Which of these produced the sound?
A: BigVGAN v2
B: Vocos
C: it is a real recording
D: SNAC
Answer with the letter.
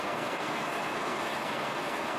D